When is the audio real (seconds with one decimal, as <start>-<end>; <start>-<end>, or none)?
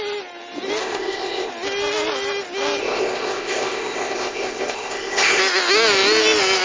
0.0-0.8; 1.5-2.8; 5.4-6.6